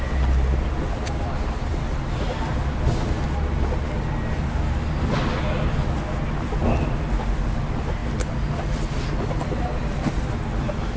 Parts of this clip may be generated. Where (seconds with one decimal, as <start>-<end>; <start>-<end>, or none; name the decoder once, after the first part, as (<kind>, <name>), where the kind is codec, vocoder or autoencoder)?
none